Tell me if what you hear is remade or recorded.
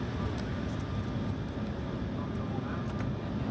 recorded